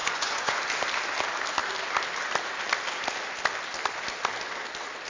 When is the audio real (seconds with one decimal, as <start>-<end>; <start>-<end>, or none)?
0.6-5.1